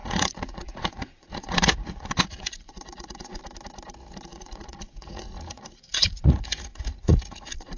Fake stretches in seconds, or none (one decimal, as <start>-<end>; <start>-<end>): 0.0-3.4; 4.3-7.8

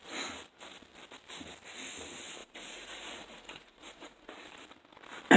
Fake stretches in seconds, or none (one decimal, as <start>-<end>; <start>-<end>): 2.4-4.3

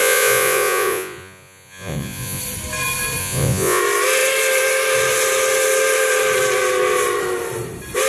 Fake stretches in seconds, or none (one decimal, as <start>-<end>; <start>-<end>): 0.0-2.4; 3.2-3.8

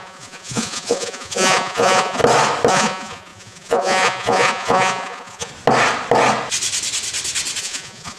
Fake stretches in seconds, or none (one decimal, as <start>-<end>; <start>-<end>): 0.0-2.2; 2.7-5.5; 7.6-8.2

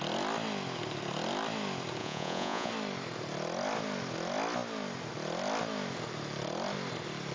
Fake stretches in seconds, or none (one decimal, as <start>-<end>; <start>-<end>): 2.0-2.7